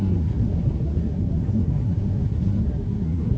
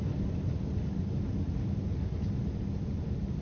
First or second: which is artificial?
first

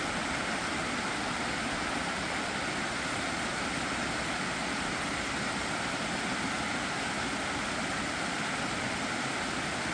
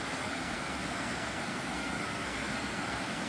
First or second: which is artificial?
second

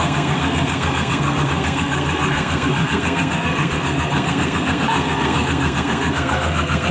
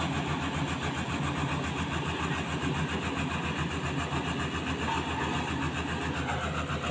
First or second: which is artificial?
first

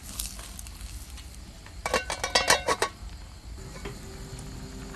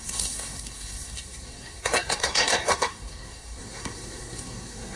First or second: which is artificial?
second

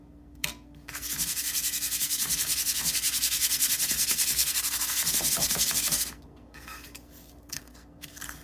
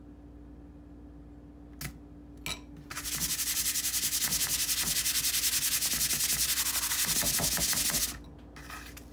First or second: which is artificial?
first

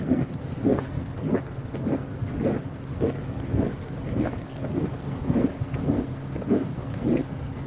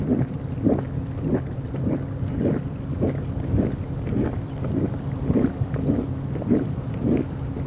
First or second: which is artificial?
first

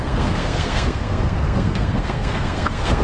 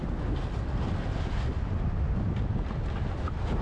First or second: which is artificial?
first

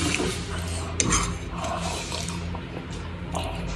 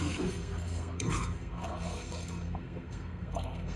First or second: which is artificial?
second